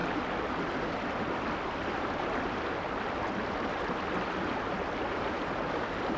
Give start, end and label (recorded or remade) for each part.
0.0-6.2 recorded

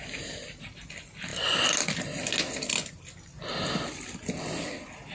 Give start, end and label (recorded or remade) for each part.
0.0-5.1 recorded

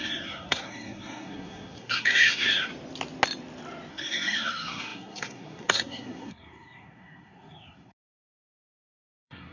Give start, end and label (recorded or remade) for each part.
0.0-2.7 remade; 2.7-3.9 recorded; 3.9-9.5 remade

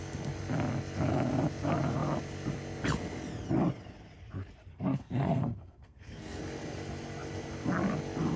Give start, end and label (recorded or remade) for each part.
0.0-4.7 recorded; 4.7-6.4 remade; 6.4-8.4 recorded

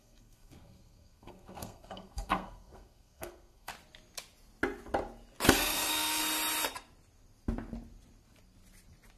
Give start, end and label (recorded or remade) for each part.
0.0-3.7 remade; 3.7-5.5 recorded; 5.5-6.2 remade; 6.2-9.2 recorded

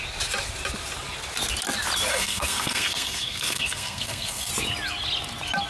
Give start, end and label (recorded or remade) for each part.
0.0-2.1 recorded; 2.1-4.5 remade; 4.5-5.7 recorded

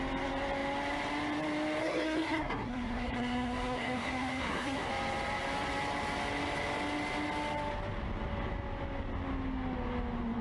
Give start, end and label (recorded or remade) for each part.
0.0-1.8 recorded; 1.8-4.9 remade; 4.9-10.4 recorded

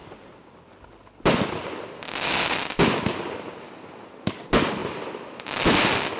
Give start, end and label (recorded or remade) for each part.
0.0-6.2 recorded